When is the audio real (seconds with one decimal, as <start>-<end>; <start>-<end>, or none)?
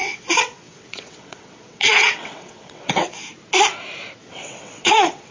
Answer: 3.2-4.2